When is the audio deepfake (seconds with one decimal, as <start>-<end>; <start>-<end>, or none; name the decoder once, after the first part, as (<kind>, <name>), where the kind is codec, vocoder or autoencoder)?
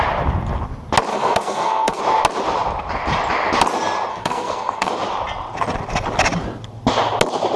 1.1-2.0 (codec, SNAC); 4.1-4.9